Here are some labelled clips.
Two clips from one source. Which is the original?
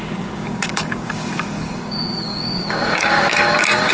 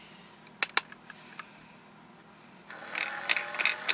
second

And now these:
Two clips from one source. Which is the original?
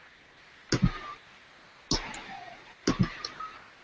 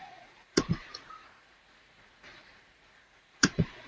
first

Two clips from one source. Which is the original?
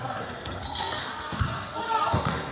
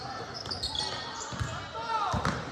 second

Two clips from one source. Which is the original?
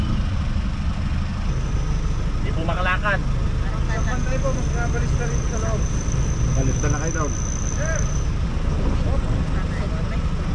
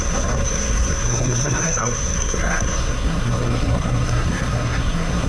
first